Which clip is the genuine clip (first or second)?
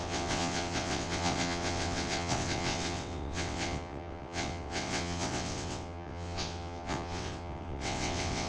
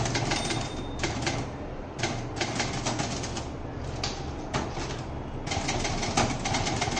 second